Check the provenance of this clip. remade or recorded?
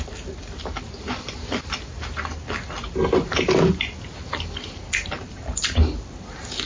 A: recorded